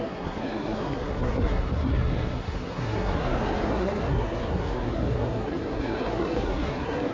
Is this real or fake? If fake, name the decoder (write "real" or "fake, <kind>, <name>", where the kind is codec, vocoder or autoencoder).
fake, codec, SNAC